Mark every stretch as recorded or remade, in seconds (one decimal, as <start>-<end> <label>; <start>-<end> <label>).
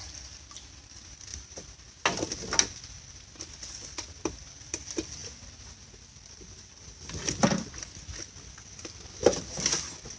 0.0-1.3 recorded; 1.3-1.9 remade; 1.9-10.2 recorded